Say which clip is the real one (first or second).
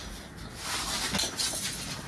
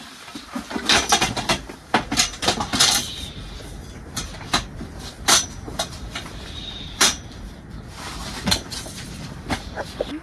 first